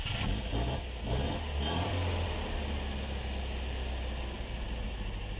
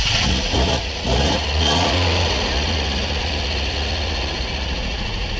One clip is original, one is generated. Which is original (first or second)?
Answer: first